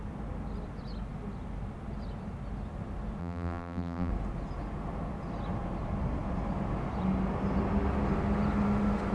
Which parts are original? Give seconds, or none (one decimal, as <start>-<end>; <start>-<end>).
0.0-3.2; 4.1-9.1